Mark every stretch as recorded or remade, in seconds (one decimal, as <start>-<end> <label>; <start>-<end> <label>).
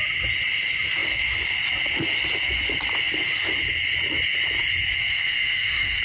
0.0-5.0 recorded; 5.0-6.0 remade